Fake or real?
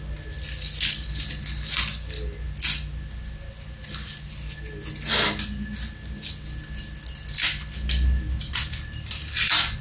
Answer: real